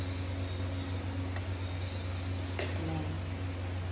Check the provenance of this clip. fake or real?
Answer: real